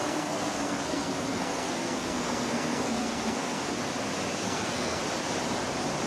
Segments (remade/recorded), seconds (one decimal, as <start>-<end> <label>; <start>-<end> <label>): 0.0-3.7 remade; 3.7-4.3 recorded; 4.3-5.0 remade; 5.0-6.1 recorded